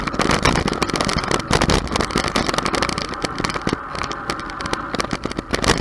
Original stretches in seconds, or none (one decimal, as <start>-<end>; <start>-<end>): 0.0-5.8